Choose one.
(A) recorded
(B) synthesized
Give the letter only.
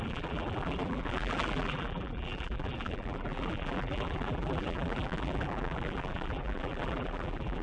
B